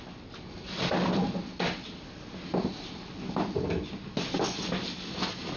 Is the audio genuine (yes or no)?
yes